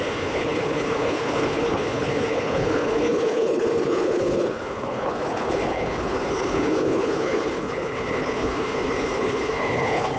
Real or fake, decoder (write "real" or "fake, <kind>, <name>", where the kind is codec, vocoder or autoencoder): fake, codec, HILCodec